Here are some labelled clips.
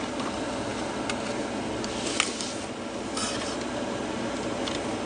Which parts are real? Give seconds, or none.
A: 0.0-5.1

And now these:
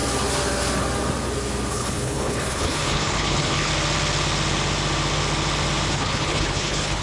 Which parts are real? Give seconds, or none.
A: 0.0-1.7; 3.7-5.9

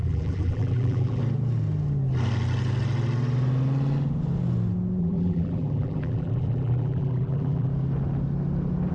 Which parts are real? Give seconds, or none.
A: 1.2-5.0; 7.7-8.9

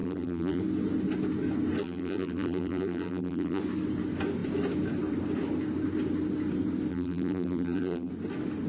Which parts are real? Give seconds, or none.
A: 0.6-1.8; 3.6-6.9; 8.1-8.7

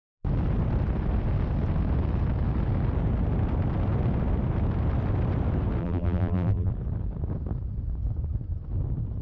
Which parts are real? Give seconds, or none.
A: 0.0-5.8; 6.7-9.2

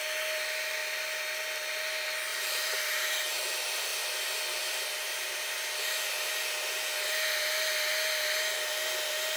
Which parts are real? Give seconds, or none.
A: 0.0-2.3; 3.1-9.4